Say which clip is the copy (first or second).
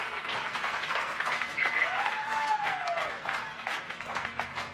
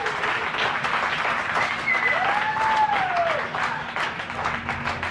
first